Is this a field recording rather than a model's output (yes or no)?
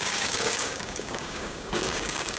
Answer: no